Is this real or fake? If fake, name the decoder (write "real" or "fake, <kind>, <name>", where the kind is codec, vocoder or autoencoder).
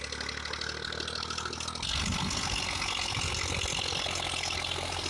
real